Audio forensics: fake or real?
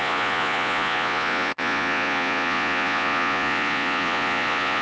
fake